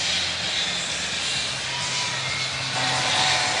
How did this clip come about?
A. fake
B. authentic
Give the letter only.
B